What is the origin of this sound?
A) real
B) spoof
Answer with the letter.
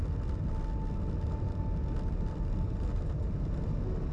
A